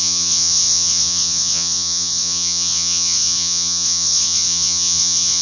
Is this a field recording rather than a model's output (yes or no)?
no